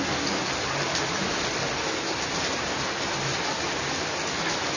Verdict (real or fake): real